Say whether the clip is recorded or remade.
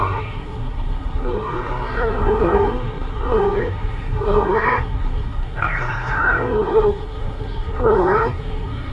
remade